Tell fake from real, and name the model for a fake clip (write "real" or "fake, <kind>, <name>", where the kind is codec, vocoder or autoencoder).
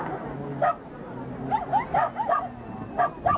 real